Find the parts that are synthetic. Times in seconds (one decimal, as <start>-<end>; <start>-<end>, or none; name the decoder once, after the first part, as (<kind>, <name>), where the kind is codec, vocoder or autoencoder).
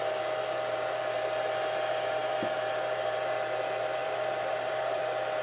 4.0-5.4 (vocoder, BigVGAN v2)